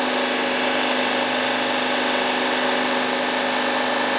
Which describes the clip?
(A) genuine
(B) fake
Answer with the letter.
A